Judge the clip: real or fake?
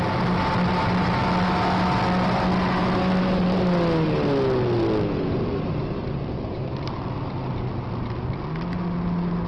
real